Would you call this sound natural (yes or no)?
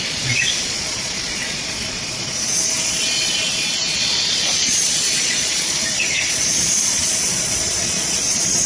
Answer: no